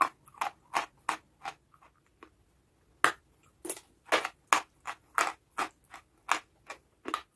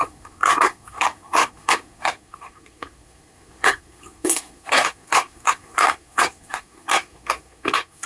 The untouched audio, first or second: first